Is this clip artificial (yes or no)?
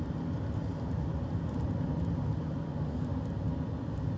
no